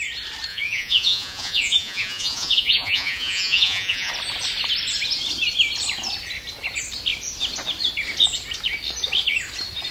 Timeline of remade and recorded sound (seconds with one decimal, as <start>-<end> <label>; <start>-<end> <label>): 0.0-0.5 recorded; 0.5-4.1 remade; 4.1-9.9 recorded